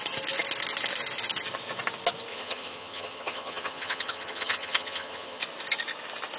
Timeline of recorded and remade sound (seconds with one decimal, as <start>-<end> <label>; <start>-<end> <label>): 0.0-2.3 recorded; 2.3-5.4 remade; 5.4-6.4 recorded